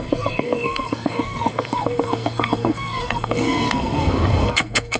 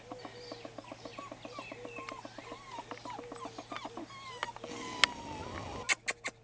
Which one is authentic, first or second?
second